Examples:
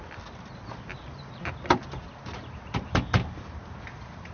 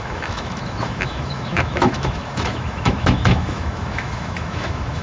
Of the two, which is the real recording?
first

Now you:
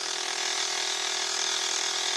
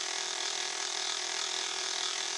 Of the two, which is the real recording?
first